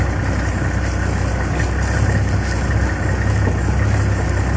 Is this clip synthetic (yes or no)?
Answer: no